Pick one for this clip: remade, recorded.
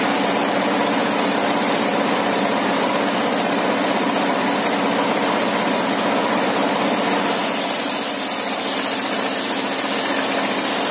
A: recorded